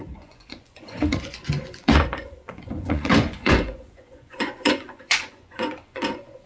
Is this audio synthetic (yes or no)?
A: yes